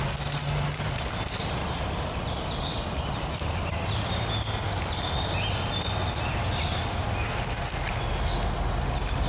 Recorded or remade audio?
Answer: recorded